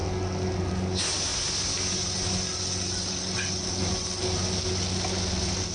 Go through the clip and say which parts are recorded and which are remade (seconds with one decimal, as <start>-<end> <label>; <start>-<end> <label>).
0.0-5.7 recorded